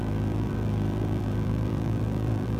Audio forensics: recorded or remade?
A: remade